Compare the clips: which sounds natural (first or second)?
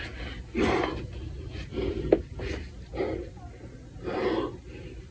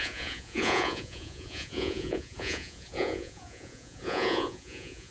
first